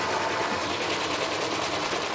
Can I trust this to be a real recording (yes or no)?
yes